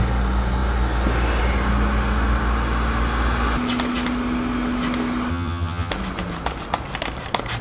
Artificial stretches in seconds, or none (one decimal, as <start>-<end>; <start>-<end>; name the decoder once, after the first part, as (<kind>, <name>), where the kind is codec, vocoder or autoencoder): 5.3-5.9 (vocoder, HiFi-GAN)